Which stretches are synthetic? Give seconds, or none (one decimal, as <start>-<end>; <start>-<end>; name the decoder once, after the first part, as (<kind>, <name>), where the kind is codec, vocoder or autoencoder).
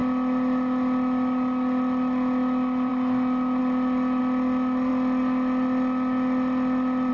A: none